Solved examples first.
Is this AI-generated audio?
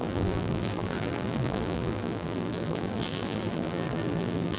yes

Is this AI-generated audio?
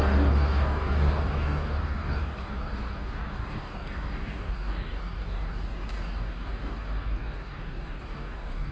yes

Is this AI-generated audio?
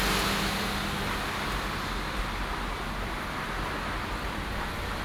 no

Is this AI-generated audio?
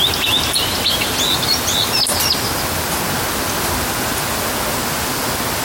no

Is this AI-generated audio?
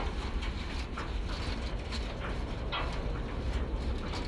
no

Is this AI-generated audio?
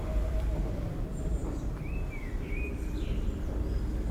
yes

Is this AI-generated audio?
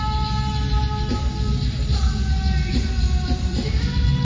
no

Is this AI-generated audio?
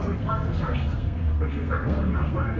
yes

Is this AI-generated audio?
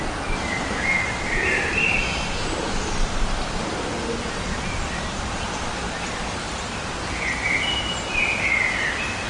no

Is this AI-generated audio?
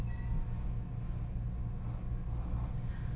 no